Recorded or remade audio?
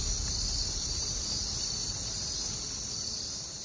recorded